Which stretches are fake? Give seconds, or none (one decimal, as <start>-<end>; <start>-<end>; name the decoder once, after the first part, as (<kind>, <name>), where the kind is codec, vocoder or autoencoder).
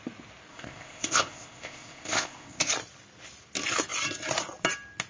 0.5-2.7 (codec, ZipCodec)